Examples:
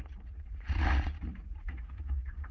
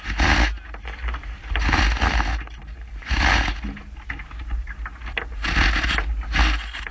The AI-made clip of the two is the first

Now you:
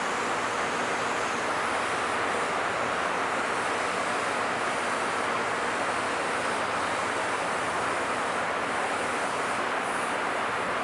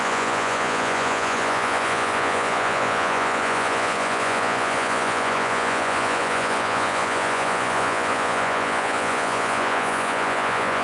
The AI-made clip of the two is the second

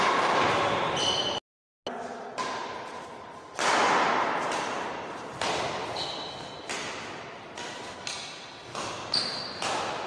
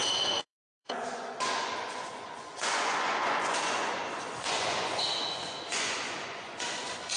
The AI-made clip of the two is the second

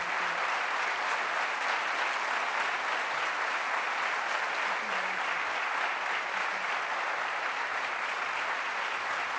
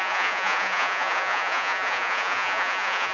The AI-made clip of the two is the second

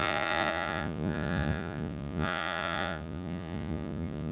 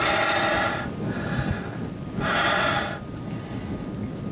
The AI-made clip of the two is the first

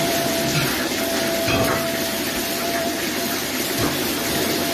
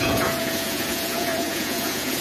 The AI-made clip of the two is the second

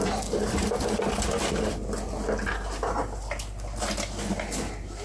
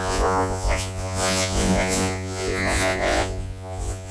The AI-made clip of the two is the second